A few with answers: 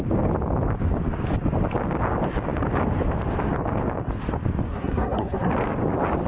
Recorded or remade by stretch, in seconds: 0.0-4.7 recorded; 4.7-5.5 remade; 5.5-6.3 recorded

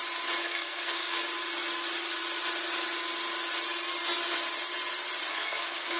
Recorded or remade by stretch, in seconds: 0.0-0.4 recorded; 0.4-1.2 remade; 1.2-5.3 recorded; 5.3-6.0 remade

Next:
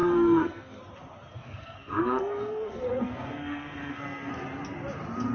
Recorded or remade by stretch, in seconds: 0.0-0.8 remade; 0.8-1.3 recorded; 1.3-4.3 remade; 4.3-5.3 recorded